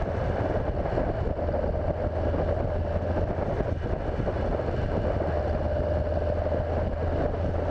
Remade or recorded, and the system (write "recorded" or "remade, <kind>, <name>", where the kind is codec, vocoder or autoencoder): recorded